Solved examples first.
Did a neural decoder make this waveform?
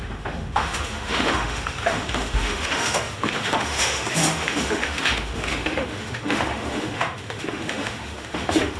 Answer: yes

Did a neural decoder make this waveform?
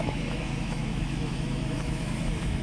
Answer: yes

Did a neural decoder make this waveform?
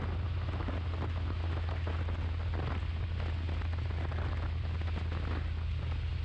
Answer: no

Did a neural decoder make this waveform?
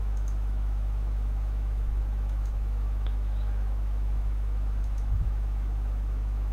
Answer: yes